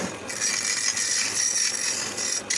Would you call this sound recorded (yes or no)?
yes